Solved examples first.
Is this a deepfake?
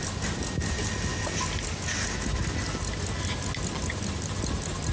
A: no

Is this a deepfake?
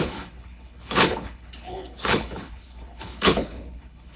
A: yes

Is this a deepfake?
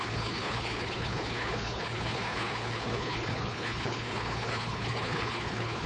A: yes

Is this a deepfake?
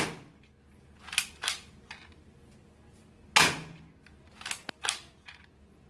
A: no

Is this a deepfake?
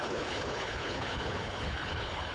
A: yes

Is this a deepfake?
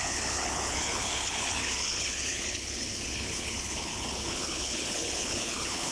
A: yes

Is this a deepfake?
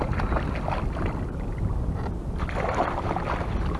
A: no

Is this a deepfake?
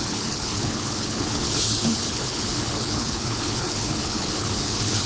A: yes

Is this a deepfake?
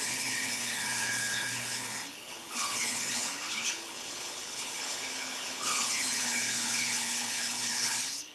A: yes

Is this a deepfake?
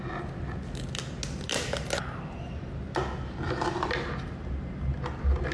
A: no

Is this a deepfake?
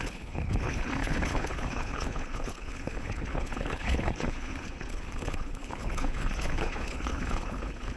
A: yes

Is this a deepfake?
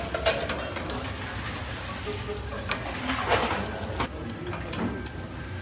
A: no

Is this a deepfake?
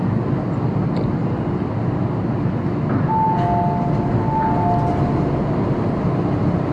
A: no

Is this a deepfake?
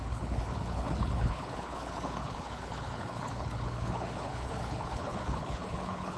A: yes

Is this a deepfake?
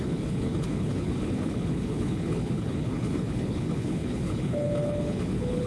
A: yes